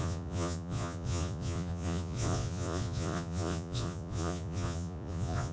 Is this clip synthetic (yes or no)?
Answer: yes